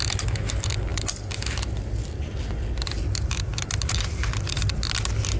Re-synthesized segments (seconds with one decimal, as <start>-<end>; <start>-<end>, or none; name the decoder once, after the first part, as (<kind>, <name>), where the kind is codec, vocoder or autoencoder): none